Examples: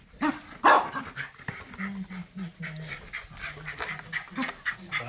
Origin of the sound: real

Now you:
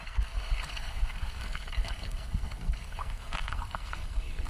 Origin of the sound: fake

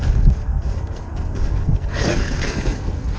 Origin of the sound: fake